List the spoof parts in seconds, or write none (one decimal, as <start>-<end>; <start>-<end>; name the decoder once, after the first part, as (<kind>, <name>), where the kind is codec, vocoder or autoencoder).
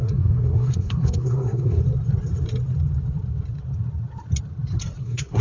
0.0-1.8 (codec, SNAC); 5.0-5.4